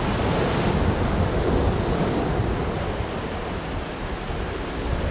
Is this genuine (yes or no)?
yes